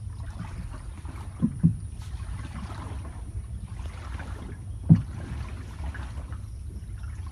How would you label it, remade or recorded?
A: recorded